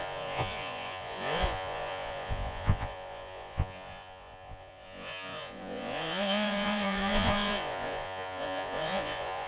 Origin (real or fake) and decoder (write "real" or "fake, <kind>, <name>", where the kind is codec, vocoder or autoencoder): fake, vocoder, Vocos